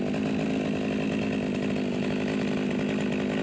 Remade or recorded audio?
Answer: recorded